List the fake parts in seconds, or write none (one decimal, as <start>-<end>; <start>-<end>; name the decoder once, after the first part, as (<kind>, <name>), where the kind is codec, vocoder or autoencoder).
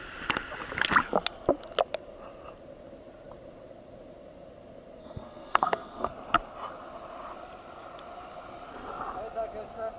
5.0-6.1 (codec, SNAC)